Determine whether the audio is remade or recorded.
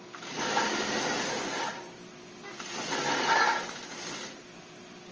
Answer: recorded